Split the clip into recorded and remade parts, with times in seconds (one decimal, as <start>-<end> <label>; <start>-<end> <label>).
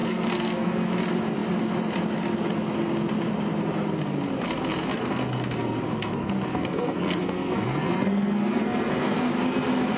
0.0-0.9 remade; 0.9-4.9 recorded; 4.9-9.3 remade; 9.3-10.0 recorded